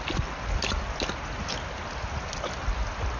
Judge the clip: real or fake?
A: real